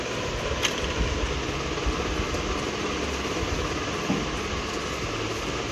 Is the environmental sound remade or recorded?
recorded